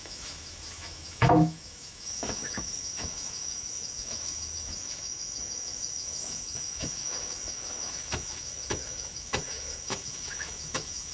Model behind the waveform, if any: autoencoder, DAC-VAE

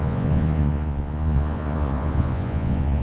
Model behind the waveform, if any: vocoder, Vocos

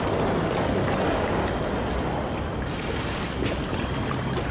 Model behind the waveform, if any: none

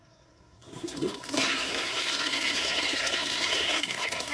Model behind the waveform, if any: codec, SNAC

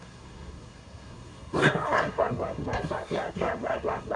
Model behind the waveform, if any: codec, SNAC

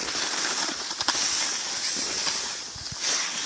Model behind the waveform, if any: none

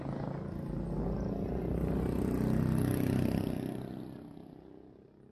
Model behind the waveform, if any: none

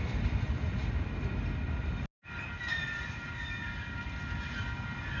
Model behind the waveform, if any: none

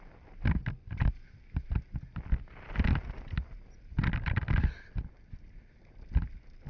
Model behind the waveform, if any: none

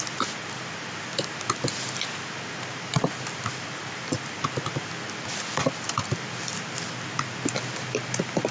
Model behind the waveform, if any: none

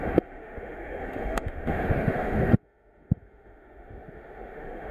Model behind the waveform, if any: autoencoder, DAC-VAE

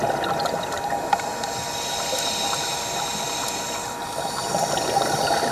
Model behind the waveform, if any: none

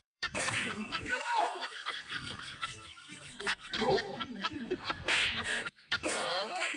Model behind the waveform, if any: codec, SNAC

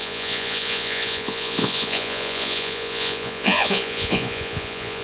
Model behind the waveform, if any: vocoder, Vocos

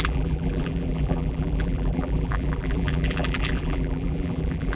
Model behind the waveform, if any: vocoder, BigVGAN v2